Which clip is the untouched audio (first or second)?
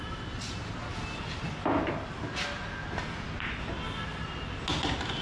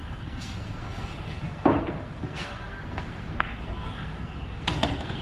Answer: first